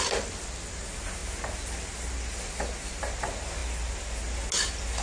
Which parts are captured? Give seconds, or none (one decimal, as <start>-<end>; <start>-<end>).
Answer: 0.0-5.0